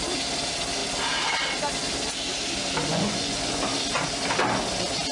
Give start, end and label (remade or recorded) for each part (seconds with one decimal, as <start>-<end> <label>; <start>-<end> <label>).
0.0-2.9 recorded; 2.9-3.6 remade; 3.6-5.1 recorded